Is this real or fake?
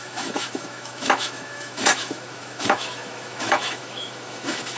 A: fake